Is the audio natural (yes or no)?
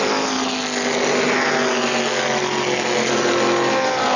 yes